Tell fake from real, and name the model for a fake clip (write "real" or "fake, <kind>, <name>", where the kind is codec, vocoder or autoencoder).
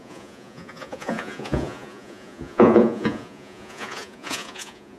fake, vocoder, Vocos